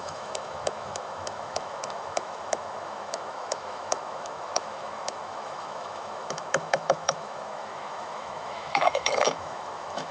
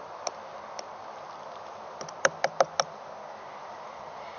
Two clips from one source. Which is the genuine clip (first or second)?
second